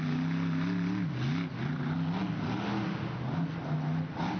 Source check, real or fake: real